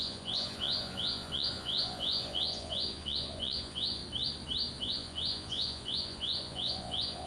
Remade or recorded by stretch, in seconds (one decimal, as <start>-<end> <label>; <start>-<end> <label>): 0.0-4.0 remade; 4.0-4.8 recorded; 4.8-7.3 remade